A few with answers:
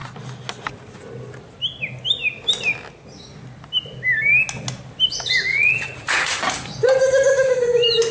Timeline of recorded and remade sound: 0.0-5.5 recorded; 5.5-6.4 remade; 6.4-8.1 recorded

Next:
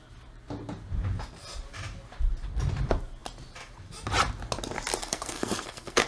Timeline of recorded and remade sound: 0.0-5.0 recorded; 5.0-6.1 remade

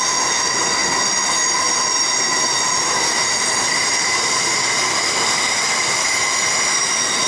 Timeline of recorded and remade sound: 0.0-7.3 recorded

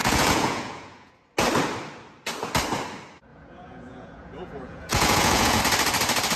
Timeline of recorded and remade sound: 0.0-1.1 remade; 1.1-3.3 recorded; 3.3-5.6 remade; 5.6-6.4 recorded

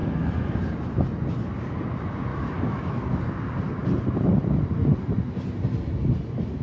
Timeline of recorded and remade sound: 0.0-2.3 recorded; 2.3-3.2 remade; 3.2-6.6 recorded

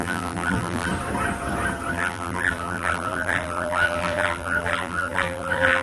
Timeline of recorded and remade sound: 0.0-0.9 remade; 0.9-1.9 recorded; 1.9-5.8 remade